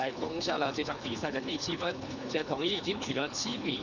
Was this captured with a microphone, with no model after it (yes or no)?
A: no